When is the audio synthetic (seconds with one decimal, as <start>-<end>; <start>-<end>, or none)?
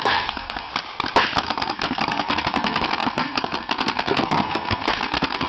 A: 0.0-0.7; 1.4-5.5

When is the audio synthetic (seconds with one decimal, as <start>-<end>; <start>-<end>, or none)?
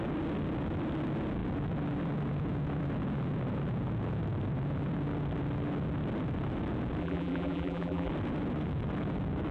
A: 7.0-8.1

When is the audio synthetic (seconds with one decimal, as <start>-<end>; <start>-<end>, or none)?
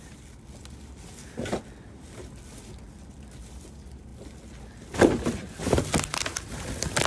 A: none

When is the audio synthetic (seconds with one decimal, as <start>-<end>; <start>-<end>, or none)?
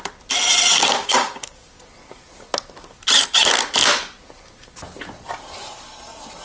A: 0.7-1.8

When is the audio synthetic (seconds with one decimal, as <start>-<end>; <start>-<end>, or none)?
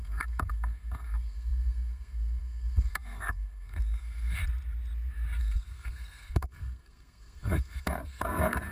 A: 0.0-4.4; 5.4-8.7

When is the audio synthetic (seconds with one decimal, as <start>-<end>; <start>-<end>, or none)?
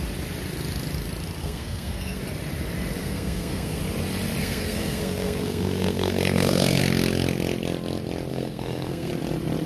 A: 1.4-2.2; 3.0-3.8; 4.4-6.8; 8.3-9.1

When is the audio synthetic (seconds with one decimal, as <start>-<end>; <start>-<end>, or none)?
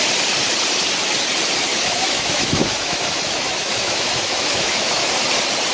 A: 1.7-5.1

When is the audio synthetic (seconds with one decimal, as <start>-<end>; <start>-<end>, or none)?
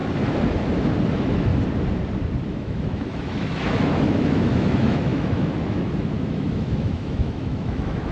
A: 1.1-1.5; 2.5-8.1